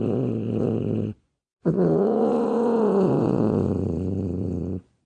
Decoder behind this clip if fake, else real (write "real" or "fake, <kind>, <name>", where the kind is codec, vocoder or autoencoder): fake, vocoder, Vocos